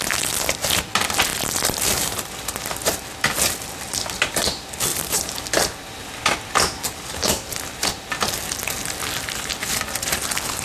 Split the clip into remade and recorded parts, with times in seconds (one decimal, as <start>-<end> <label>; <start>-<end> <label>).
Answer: 0.0-10.6 recorded